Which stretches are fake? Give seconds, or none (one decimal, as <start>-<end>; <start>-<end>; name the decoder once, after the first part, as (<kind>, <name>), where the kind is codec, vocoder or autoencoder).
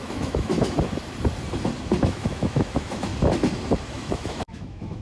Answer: 0.0-0.5 (autoencoder, DAC-VAE); 2.0-3.1; 3.9-5.0